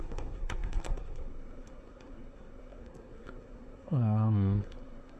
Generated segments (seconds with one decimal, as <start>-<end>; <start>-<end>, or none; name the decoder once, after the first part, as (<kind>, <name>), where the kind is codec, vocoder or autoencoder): 0.0-5.2 (codec, SNAC)